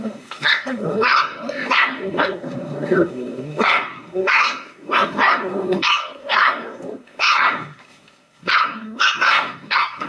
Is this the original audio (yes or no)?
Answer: no